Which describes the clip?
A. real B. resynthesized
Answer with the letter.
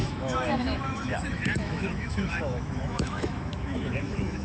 B